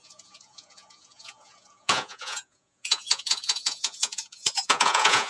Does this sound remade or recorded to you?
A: remade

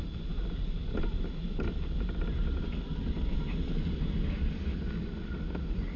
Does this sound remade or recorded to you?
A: recorded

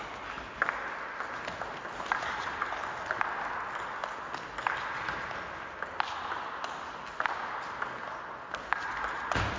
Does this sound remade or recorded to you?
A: recorded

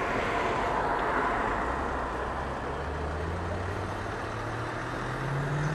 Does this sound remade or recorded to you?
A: recorded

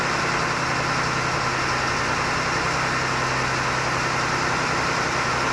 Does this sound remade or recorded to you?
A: recorded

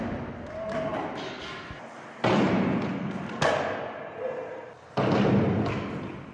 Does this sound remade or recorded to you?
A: recorded